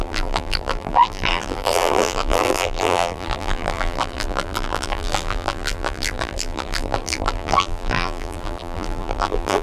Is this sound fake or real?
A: fake